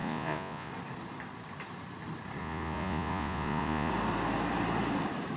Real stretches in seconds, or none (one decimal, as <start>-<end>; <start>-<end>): 0.7-2.4; 3.9-5.4